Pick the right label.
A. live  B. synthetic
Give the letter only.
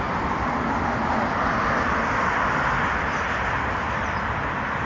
A